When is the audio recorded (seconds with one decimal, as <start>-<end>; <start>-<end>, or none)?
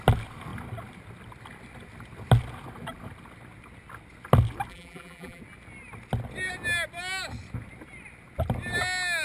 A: 0.0-4.7; 5.4-9.2